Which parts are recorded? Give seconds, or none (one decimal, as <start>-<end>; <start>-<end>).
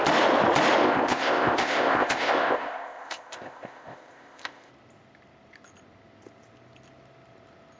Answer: 0.0-0.8; 4.7-7.8